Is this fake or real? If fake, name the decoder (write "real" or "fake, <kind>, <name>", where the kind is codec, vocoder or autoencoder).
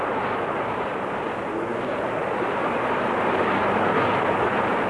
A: real